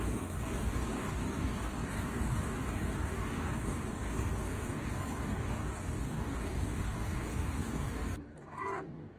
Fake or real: fake